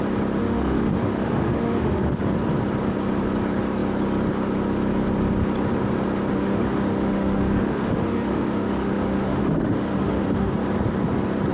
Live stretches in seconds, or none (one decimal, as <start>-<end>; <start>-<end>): 0.0-0.4; 2.2-6.3; 10.5-11.5